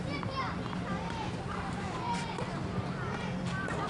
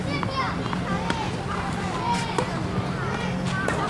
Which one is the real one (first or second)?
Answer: second